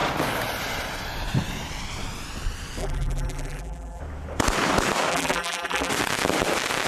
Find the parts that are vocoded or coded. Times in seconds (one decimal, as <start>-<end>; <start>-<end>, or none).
2.8-4.0; 5.1-5.9